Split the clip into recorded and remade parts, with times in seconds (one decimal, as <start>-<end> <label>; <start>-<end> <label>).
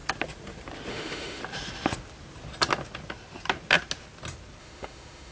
0.0-0.9 recorded; 0.9-1.4 remade; 1.4-4.6 recorded; 4.6-5.3 remade